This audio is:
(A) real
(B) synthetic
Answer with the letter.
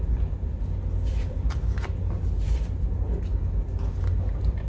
A